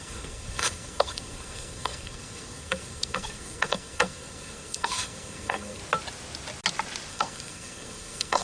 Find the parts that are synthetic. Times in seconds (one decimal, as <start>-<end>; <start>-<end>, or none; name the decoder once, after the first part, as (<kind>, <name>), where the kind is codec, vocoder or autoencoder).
0.0-5.8 (codec, SNAC); 7.1-8.4